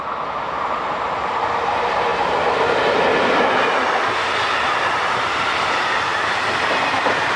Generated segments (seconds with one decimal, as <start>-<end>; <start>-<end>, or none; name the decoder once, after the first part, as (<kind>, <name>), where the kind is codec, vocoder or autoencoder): 0.0-2.1 (vocoder, BigVGAN v2); 5.5-7.4